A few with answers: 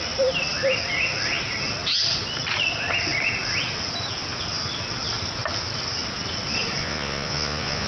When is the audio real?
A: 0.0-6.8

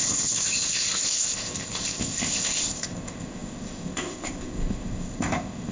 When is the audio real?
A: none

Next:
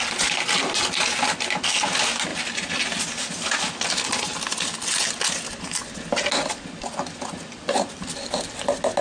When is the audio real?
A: 0.0-9.0